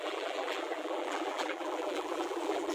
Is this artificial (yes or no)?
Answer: yes